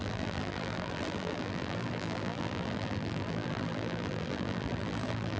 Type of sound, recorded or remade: remade